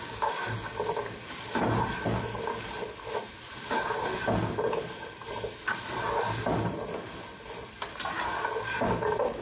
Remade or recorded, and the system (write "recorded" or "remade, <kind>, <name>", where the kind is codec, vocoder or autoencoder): recorded